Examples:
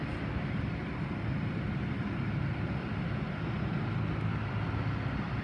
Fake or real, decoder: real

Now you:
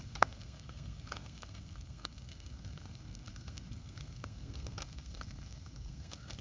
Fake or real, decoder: fake, codec, SNAC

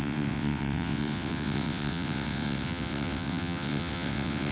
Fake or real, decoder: fake, vocoder, WaveNeXt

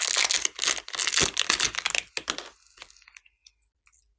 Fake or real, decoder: real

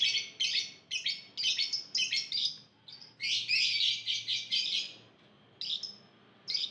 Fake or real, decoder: real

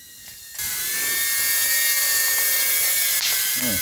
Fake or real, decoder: real